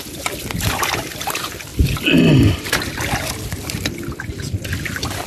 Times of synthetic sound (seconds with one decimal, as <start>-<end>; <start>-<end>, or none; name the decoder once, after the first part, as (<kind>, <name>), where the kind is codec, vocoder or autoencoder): none